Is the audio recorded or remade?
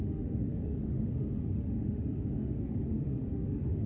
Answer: remade